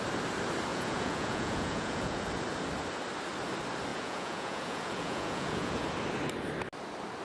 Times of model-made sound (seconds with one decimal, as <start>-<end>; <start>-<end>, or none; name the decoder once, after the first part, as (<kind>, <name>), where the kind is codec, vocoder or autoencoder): 0.7-2.3 (vocoder, Vocos); 3.9-5.8